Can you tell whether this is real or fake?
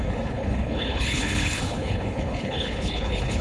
fake